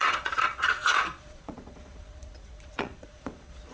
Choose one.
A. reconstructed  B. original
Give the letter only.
A